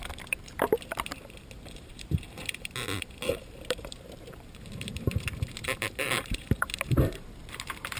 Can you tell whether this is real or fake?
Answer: fake